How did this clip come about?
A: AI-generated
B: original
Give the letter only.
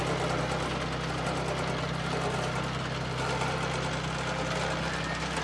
B